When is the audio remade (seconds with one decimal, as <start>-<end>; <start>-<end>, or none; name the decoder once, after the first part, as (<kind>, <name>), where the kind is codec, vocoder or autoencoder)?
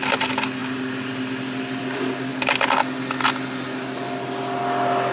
none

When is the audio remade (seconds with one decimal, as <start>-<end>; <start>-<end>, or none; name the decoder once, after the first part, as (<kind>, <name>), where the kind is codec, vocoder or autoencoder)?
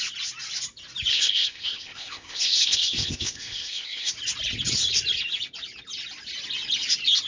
1.1-4.1 (codec, ZipCodec)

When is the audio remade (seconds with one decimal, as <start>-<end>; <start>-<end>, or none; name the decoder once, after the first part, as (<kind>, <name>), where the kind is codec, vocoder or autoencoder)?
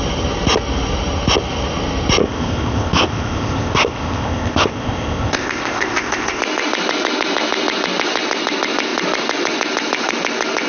2.2-6.4 (codec, ZipCodec)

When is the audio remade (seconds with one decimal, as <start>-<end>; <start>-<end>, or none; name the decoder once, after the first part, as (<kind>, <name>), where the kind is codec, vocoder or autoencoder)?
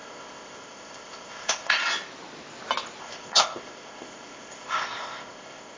0.0-1.8 (codec, ZipCodec); 3.0-5.8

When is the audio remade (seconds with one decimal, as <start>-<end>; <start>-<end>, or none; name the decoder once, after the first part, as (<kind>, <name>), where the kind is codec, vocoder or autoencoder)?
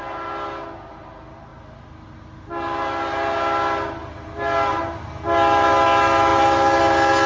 none